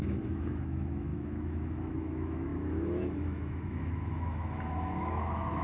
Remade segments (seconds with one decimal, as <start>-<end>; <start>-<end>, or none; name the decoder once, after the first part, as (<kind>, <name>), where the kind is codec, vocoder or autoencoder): 0.0-5.6 (autoencoder, DAC-VAE)

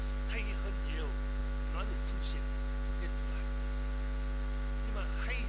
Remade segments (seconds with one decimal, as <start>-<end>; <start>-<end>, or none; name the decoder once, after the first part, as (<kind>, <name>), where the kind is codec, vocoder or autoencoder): none

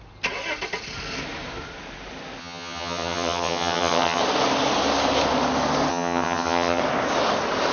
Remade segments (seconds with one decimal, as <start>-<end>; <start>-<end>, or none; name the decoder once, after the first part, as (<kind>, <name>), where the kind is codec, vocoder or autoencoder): 2.4-4.2 (vocoder, HiFi-GAN); 5.9-6.8

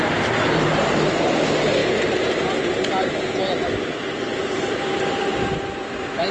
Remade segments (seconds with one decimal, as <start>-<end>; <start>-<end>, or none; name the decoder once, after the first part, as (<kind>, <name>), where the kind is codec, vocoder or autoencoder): none

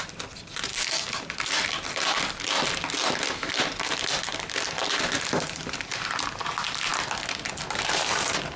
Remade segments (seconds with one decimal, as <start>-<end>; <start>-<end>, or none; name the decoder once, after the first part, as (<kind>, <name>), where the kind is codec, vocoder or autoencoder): 0.7-1.3 (codec, DAC)

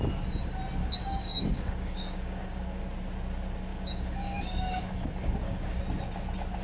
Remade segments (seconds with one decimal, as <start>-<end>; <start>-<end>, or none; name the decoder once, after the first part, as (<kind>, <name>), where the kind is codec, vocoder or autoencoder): 0.8-2.8 (codec, DAC); 3.7-5.8